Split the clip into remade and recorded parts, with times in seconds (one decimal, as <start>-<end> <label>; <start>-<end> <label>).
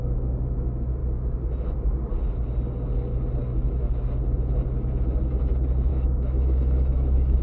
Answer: 0.0-3.5 recorded; 3.5-4.1 remade; 4.1-5.9 recorded; 5.9-7.4 remade